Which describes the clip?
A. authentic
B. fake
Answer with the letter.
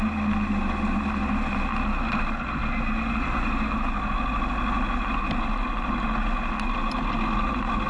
A